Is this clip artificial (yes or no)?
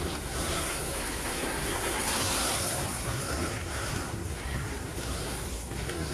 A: yes